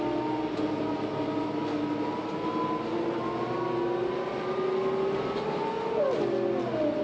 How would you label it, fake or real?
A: real